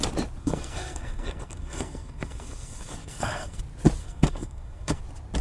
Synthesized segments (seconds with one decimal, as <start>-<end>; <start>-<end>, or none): 0.4-3.6; 4.0-5.0